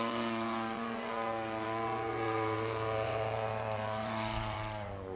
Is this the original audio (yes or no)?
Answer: no